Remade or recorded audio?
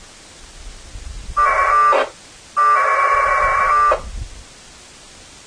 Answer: recorded